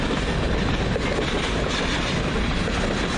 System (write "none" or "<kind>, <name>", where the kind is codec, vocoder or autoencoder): none